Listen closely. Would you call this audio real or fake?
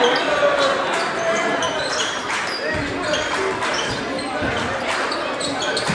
real